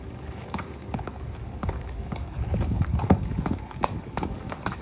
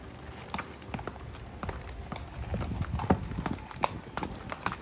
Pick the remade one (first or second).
first